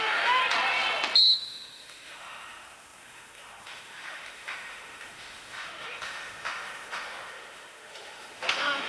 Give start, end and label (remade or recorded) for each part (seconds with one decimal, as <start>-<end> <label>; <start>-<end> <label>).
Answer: 0.0-0.4 remade; 0.4-1.4 recorded; 1.4-8.9 remade